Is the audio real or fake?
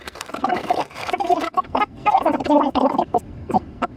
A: fake